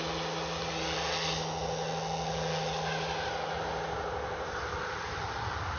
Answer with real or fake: real